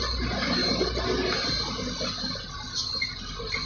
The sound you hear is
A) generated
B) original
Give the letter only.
B